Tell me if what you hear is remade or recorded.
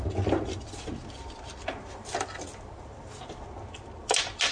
recorded